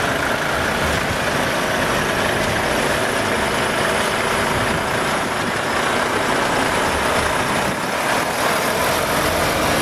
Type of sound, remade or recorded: recorded